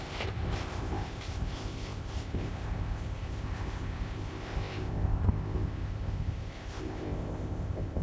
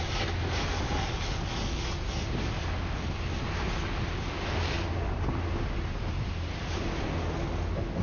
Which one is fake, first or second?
first